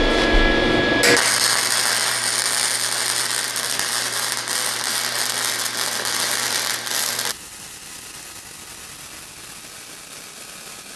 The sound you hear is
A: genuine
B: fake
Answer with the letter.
A